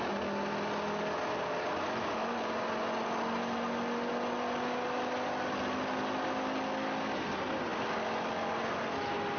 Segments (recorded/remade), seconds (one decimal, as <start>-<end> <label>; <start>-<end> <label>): 0.0-9.4 recorded